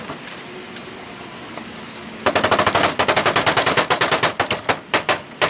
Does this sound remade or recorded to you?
recorded